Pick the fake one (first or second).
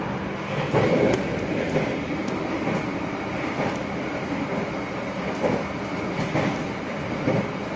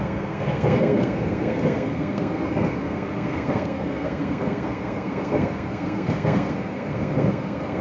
second